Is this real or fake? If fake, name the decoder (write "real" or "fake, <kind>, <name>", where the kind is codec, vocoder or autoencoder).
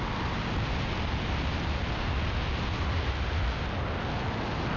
real